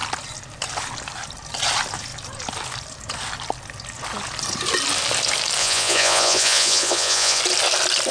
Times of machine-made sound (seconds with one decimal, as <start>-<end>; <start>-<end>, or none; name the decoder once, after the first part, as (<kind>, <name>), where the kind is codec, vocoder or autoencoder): 5.6-7.4 (vocoder, Vocos)